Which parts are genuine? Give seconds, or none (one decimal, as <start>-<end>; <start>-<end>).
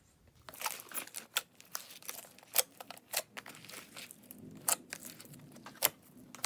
0.0-6.5